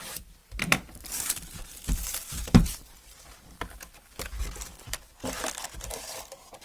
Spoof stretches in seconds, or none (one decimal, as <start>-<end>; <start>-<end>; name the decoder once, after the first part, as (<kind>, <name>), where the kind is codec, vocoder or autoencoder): 0.0-6.6 (vocoder, BigVGAN v2)